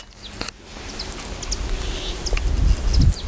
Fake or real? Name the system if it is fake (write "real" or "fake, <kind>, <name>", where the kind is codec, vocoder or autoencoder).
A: real